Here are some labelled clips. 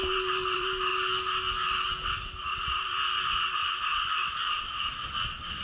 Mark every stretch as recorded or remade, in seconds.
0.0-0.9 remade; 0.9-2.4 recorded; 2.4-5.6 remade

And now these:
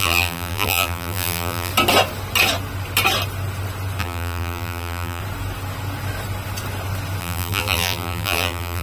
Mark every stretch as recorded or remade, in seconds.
0.0-1.7 remade; 1.7-4.0 recorded; 4.0-5.2 remade; 5.2-7.2 recorded; 7.2-8.8 remade

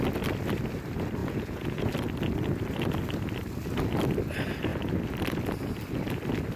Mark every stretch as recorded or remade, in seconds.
0.0-1.2 recorded; 1.2-1.9 remade; 1.9-6.6 recorded